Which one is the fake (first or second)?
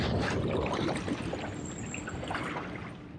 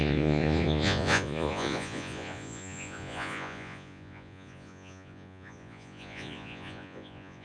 second